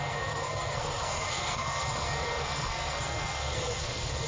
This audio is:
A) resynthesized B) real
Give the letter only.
A